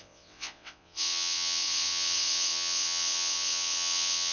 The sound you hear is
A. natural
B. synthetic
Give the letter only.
B